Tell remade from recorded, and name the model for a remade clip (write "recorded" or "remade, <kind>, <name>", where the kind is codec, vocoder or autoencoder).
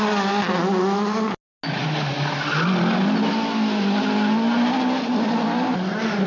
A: recorded